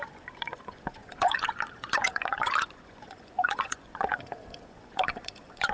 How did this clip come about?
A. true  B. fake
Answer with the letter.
B